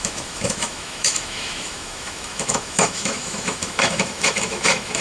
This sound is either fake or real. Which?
fake